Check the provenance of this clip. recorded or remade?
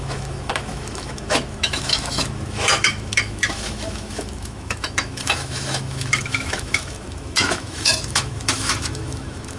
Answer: remade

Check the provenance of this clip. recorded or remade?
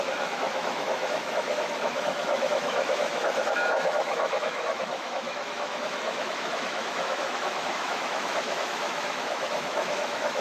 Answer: remade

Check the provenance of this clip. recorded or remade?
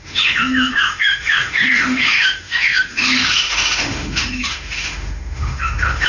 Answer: remade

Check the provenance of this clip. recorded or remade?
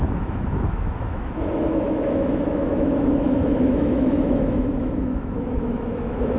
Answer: remade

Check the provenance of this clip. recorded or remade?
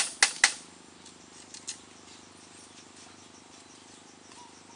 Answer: recorded